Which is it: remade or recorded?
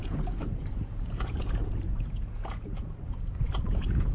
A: remade